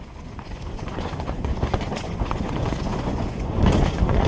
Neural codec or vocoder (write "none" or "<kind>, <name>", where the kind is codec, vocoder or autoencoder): vocoder, Vocos